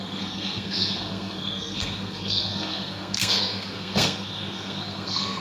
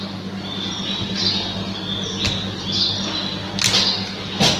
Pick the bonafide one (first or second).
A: second